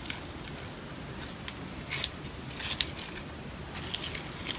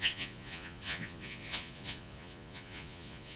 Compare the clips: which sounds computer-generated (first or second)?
second